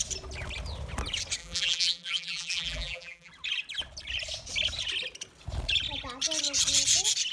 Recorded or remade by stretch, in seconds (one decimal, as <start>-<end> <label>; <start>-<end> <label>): 0.0-1.4 recorded; 1.4-3.3 remade; 3.3-7.3 recorded